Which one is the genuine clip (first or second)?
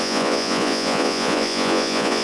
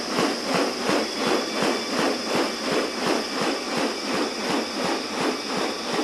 second